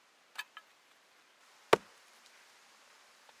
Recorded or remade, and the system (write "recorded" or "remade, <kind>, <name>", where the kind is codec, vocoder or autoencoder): recorded